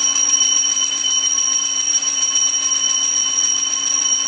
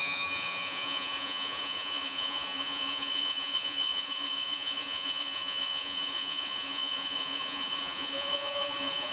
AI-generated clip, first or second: second